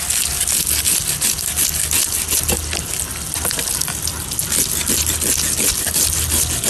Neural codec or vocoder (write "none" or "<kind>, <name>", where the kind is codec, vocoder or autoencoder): none